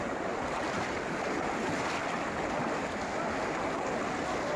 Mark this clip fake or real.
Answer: real